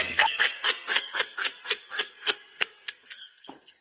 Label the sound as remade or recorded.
remade